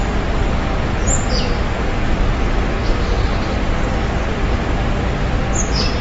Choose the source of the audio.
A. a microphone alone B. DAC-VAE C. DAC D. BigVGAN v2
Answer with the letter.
A